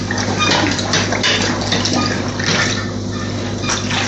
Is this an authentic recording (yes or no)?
yes